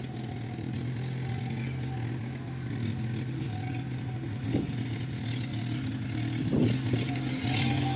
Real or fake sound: real